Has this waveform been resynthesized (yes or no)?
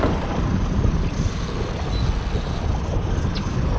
no